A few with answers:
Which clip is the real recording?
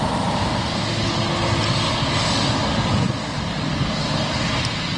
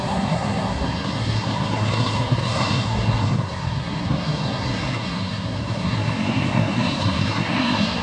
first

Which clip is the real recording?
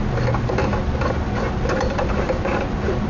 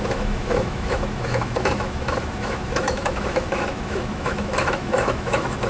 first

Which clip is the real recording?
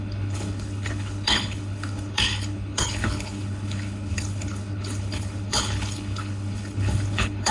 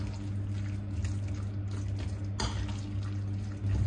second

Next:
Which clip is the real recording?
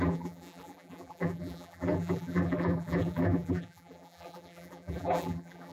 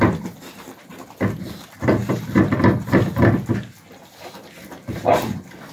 second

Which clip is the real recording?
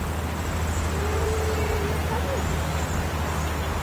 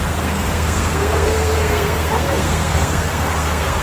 first